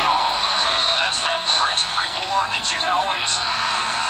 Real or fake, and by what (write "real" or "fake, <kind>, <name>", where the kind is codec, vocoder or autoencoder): fake, codec, SNAC